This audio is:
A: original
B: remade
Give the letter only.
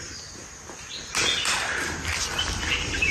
A